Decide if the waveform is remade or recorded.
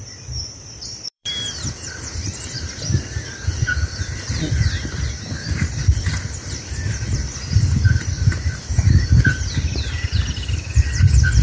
remade